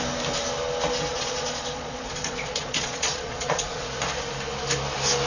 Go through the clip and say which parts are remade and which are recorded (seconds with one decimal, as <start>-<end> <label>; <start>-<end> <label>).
0.0-1.1 recorded; 1.1-3.9 remade; 3.9-5.3 recorded